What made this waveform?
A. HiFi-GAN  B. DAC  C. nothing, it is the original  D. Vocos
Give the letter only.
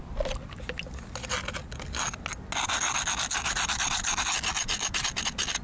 C